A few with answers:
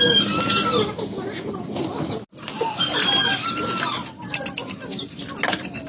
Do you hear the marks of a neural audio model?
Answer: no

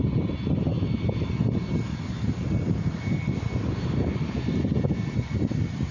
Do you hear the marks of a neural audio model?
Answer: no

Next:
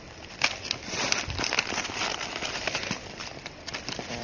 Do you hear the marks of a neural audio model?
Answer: no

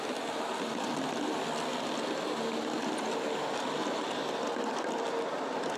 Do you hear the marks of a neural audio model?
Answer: no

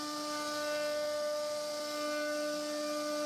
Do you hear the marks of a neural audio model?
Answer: no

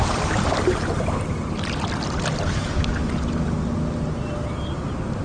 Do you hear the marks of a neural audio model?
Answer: no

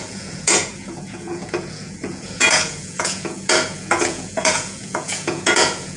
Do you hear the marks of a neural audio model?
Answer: yes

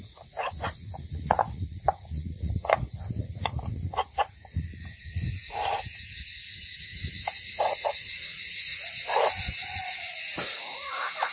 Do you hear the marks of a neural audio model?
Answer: yes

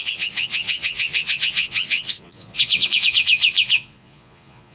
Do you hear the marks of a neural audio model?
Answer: yes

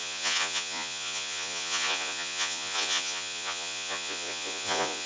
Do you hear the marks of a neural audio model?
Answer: yes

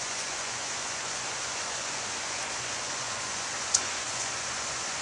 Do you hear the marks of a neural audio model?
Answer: yes